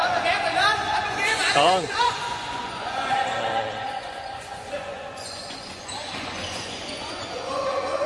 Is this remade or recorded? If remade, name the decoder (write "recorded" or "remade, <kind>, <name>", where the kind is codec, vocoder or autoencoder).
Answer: remade, vocoder, Vocos